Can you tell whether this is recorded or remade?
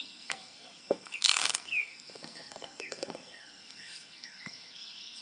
remade